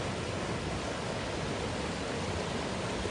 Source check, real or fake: real